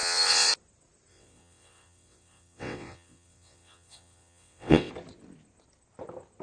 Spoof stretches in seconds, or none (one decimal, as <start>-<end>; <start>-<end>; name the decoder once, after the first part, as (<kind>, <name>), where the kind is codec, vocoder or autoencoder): 0.0-0.5 (vocoder, WaveNeXt); 1.1-4.9